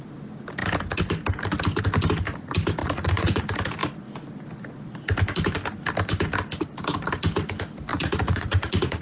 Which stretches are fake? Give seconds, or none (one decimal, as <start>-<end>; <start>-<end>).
2.8-3.4; 7.9-9.0